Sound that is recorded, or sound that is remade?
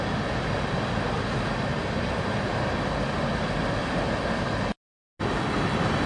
recorded